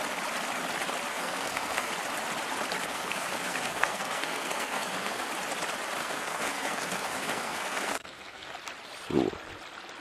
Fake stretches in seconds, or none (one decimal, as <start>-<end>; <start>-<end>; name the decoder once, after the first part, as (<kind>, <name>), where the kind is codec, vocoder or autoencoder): 1.1-1.9 (codec, SNAC); 2.8-5.3; 6.0-8.5